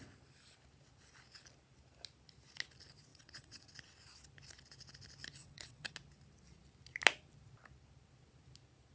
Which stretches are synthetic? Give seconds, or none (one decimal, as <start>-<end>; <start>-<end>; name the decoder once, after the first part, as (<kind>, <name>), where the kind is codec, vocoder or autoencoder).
3.1-3.7 (vocoder, WaveNeXt); 5.4-5.9